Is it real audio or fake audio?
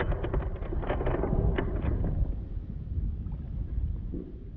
real